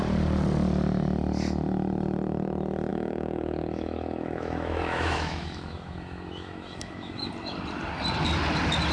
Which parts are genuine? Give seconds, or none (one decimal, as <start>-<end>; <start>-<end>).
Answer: 0.0-2.9; 7.3-8.9